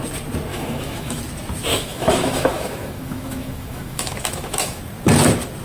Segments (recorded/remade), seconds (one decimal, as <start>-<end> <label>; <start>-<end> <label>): 0.0-0.5 recorded; 0.5-1.2 remade; 1.2-1.7 recorded; 1.7-4.8 remade; 4.8-5.6 recorded